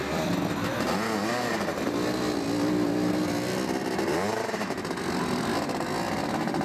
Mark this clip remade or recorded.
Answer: recorded